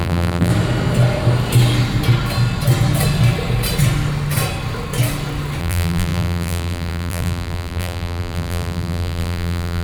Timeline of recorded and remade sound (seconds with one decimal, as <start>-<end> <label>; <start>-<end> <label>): 0.0-0.5 remade; 0.5-5.6 recorded; 5.6-9.8 remade